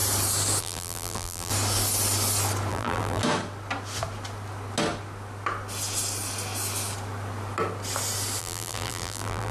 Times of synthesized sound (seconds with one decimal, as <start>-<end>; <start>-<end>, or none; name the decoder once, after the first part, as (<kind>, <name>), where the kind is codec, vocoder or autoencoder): 0.6-1.5 (vocoder, BigVGAN v2); 2.7-3.2; 8.4-9.5